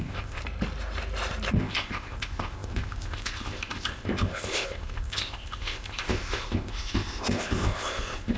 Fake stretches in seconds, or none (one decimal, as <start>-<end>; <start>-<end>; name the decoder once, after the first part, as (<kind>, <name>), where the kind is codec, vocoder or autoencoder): 0.0-0.4 (codec, ZipCodec); 1.5-8.4